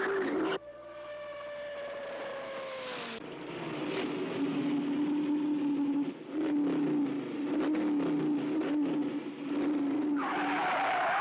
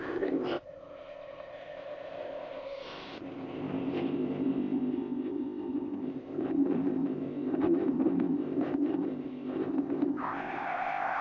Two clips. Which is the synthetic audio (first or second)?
second